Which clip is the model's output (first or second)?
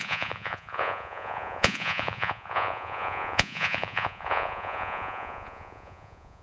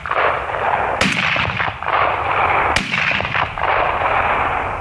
first